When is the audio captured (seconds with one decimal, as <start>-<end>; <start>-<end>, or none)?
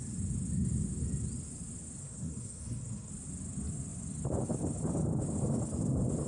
0.0-2.0; 3.1-6.3